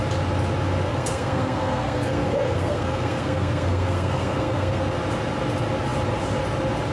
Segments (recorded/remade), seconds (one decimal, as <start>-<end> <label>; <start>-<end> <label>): 0.0-0.9 recorded; 0.9-4.8 remade; 4.8-6.9 recorded